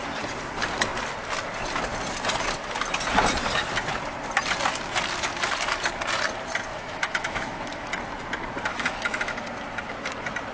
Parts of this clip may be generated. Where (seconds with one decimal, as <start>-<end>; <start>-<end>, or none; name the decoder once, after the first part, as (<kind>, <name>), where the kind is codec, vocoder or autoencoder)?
6.7-7.9 (autoencoder, DAC-VAE); 8.7-9.3